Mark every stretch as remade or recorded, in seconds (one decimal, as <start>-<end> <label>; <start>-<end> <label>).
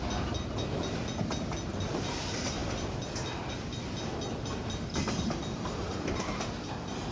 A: 0.0-7.1 recorded